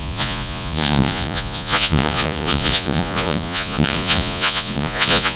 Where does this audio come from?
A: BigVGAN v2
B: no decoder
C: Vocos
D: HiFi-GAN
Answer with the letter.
C